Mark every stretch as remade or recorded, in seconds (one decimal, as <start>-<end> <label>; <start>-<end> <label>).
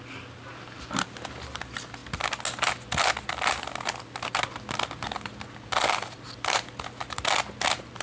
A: 0.0-8.0 recorded